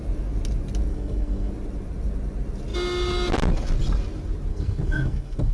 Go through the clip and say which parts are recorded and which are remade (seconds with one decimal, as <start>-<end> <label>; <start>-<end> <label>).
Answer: 0.0-0.9 recorded; 0.9-1.5 remade; 1.5-4.5 recorded; 4.5-5.5 remade